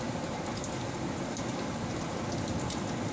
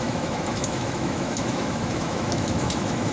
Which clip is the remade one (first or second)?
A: second